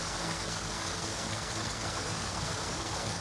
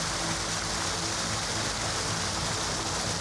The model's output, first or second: first